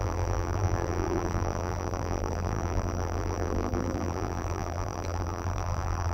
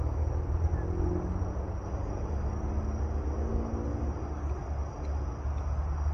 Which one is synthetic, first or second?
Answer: first